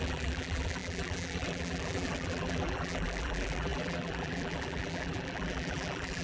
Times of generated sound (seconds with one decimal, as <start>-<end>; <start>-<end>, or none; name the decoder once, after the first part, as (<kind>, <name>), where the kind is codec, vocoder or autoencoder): 0.0-6.2 (vocoder, BigVGAN v2)